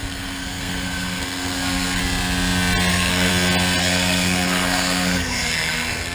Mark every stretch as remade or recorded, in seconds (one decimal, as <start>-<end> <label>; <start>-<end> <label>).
0.0-2.0 remade; 2.0-2.9 recorded; 2.9-3.3 remade; 3.3-3.8 recorded; 3.8-6.1 remade